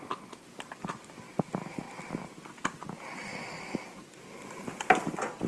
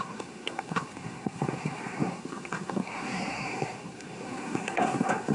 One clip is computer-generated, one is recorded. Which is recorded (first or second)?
first